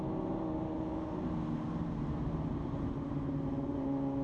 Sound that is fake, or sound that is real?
real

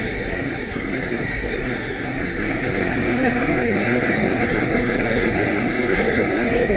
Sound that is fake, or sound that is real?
fake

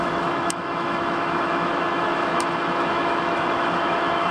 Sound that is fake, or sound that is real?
fake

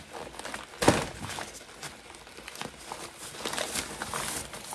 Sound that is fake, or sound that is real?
real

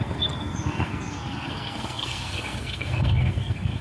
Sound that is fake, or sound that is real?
fake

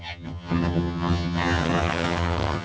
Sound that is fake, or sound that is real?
fake